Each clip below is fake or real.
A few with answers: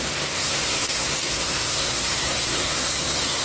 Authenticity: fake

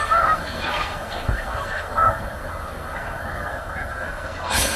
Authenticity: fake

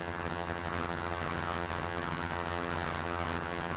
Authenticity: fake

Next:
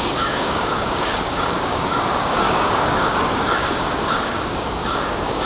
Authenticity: fake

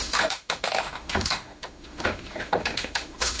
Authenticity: fake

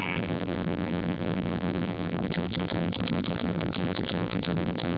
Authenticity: fake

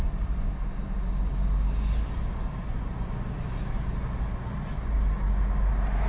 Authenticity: real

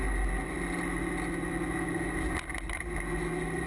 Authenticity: real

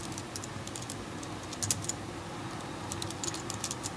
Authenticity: real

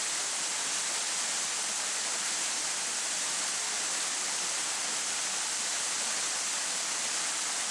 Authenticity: real